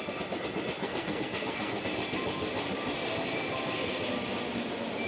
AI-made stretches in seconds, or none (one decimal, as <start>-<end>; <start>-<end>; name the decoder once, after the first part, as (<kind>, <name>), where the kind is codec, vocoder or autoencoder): 0.8-1.8 (codec, SNAC)